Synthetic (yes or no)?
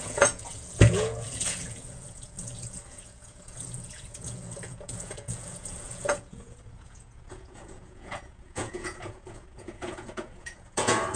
yes